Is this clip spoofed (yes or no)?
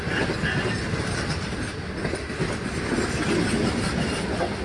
no